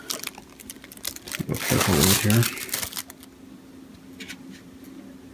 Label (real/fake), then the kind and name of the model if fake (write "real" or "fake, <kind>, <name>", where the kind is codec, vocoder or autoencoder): real